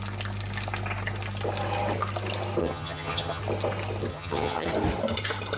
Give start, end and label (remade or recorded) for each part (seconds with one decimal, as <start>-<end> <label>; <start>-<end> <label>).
0.0-2.6 recorded; 2.6-3.4 remade; 3.4-4.1 recorded; 4.1-4.7 remade; 4.7-5.6 recorded